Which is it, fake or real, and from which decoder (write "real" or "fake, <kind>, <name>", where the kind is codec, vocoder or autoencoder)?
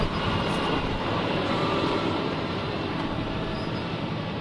fake, vocoder, BigVGAN v2